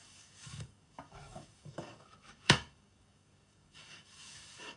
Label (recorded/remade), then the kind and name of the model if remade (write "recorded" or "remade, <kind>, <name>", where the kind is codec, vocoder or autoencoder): remade, codec, DAC